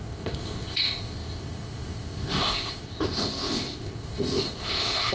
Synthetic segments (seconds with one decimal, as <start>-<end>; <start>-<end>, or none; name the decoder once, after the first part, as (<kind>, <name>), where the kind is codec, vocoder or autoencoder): 0.0-5.1 (codec, ZipCodec)